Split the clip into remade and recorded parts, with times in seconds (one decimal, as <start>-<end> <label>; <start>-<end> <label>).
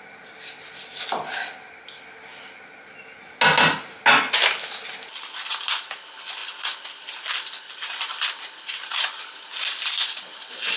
0.0-10.8 recorded